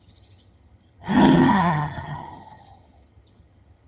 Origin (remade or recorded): remade